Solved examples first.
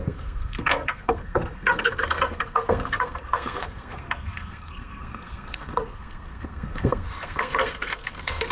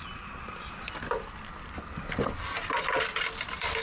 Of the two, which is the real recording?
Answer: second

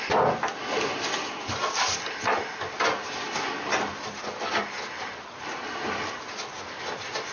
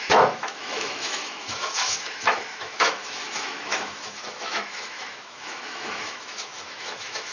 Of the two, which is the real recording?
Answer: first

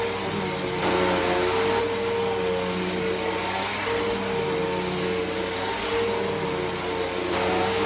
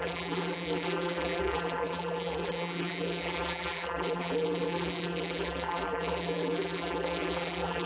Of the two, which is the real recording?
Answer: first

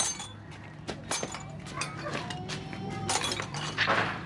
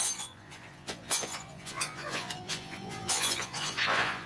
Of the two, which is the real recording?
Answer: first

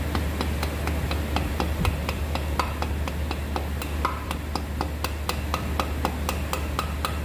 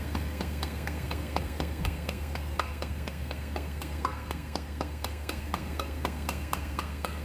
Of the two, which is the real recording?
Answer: first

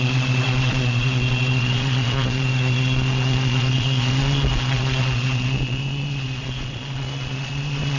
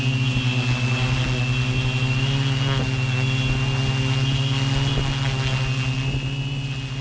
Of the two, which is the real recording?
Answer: second